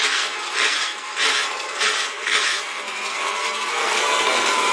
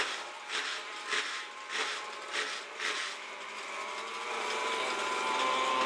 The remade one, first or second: first